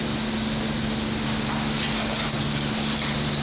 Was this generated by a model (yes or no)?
no